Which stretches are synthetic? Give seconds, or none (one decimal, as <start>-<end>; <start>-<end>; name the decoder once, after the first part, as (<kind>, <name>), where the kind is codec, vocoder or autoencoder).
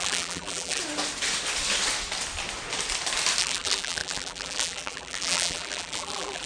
0.0-0.8 (vocoder, BigVGAN v2); 3.4-6.5